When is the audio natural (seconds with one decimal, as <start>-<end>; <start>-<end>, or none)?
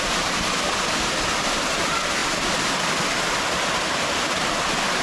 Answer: 0.0-5.0